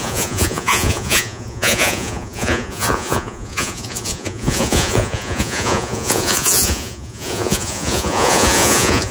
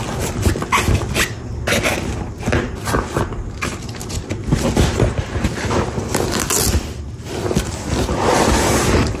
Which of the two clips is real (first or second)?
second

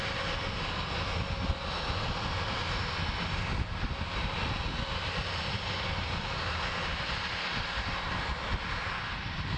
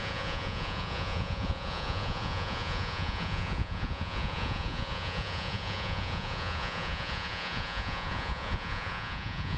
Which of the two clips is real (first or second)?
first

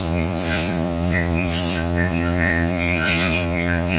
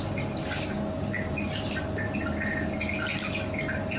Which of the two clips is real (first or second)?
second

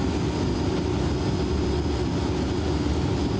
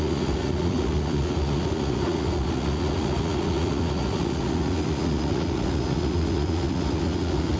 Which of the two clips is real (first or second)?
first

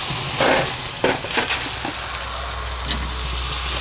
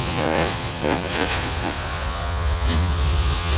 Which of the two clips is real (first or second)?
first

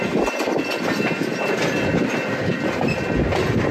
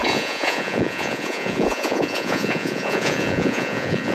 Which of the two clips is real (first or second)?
first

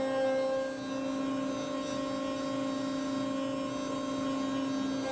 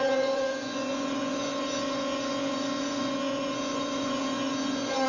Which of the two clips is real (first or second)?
first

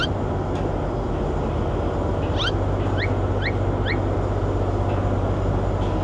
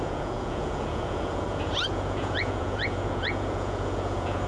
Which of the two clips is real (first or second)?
first